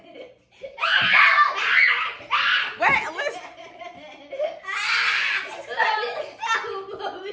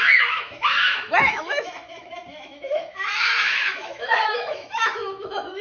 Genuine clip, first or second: first